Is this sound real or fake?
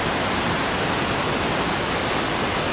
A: real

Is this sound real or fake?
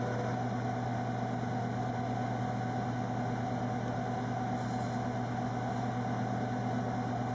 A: real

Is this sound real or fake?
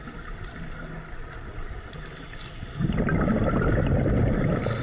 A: real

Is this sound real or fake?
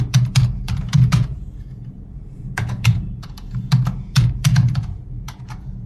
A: fake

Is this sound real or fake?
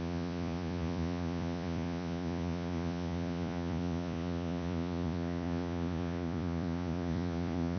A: fake